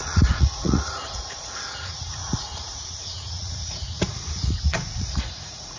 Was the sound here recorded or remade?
remade